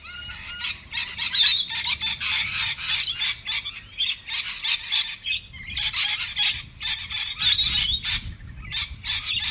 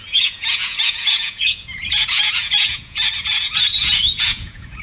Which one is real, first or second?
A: first